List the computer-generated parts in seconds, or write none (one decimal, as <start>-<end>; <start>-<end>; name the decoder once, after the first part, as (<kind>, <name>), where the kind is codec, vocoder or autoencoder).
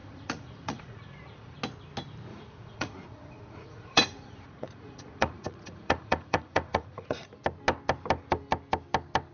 0.0-1.6 (vocoder, Vocos); 2.3-7.3